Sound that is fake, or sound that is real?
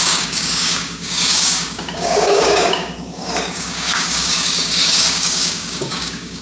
fake